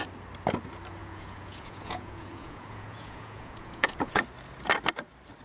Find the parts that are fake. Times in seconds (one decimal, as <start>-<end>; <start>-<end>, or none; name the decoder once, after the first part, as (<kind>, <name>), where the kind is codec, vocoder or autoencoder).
1.0-4.2 (vocoder, Vocos)